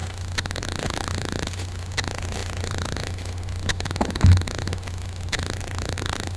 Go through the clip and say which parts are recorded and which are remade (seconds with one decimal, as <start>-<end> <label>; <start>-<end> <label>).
0.0-6.4 remade